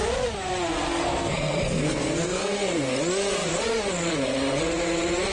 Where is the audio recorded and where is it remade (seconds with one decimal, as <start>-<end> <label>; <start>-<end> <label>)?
0.0-0.9 recorded; 0.9-2.9 remade; 2.9-5.3 recorded